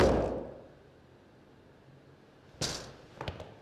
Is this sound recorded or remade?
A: recorded